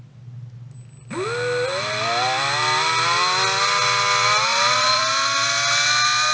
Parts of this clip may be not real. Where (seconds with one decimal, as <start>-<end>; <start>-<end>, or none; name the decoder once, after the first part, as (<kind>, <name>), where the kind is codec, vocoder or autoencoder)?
4.5-5.0 (vocoder, BigVGAN v2)

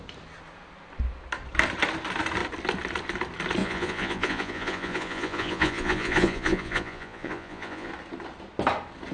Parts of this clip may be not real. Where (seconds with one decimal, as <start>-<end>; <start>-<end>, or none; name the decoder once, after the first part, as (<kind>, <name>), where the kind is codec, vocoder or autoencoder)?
3.6-7.9 (vocoder, Vocos)

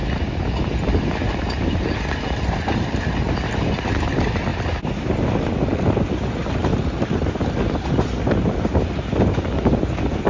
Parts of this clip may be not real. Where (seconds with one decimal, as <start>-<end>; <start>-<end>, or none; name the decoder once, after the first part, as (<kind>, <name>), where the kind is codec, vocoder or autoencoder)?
none

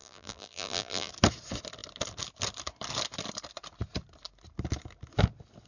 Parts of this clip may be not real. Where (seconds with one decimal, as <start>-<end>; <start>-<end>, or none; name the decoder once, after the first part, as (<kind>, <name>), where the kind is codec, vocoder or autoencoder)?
0.0-1.1 (vocoder, BigVGAN v2)

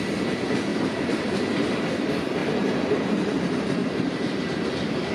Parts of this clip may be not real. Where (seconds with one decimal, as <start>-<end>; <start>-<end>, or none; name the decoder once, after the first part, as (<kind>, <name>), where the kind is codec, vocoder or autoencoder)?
0.7-1.3 (vocoder, BigVGAN v2); 3.8-4.4

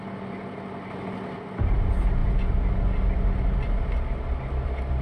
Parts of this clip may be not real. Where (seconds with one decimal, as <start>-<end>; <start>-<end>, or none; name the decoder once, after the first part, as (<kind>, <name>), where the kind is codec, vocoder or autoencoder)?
none